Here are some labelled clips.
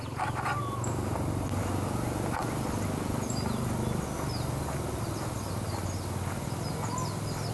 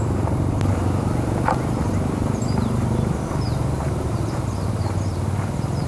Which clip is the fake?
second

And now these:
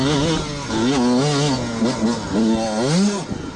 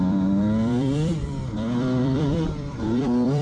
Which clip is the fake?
second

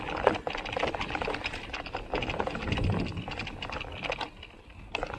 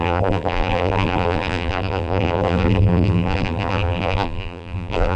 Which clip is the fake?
second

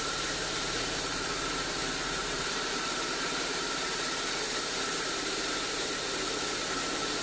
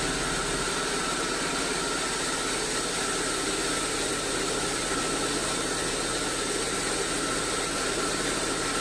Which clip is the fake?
first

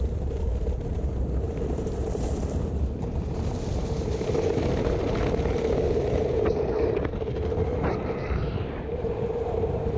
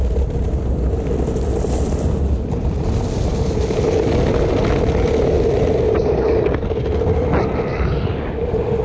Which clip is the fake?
first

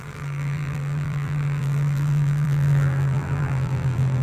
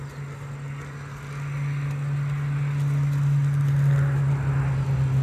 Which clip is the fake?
first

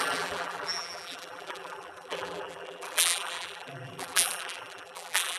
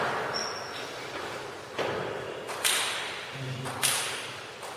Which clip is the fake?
first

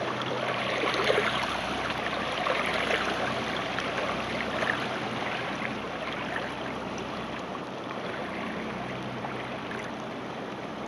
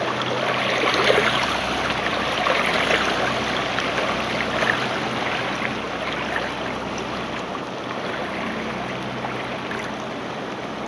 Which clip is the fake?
first